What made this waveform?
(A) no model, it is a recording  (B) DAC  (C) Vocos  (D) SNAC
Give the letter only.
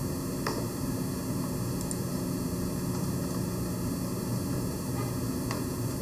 A